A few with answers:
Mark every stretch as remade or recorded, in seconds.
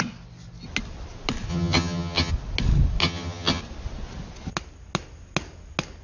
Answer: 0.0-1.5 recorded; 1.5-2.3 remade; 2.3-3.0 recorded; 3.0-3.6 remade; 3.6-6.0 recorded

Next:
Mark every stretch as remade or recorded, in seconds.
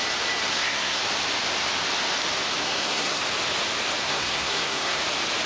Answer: 0.0-0.5 recorded; 0.5-1.0 remade; 1.0-2.6 recorded; 2.6-3.2 remade; 3.2-4.0 recorded; 4.0-5.0 remade; 5.0-5.5 recorded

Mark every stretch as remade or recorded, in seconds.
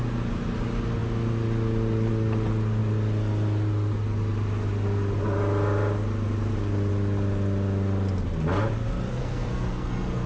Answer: 0.0-9.2 recorded; 9.2-10.3 remade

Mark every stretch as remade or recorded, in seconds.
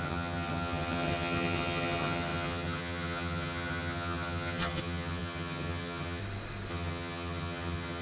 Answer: 0.0-6.2 remade; 6.2-6.7 recorded; 6.7-8.0 remade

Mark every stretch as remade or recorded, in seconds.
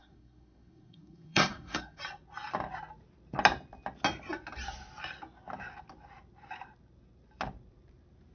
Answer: 0.0-2.0 remade; 2.0-8.3 recorded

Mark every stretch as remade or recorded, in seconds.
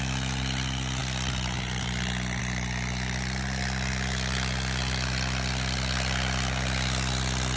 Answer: 0.0-7.6 recorded